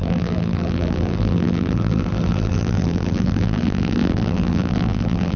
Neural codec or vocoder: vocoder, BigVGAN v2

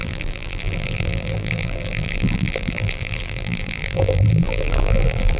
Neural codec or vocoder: vocoder, BigVGAN v2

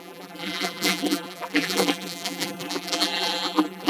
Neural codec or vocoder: vocoder, BigVGAN v2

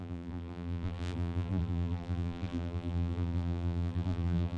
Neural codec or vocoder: vocoder, BigVGAN v2